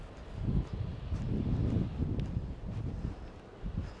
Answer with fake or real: real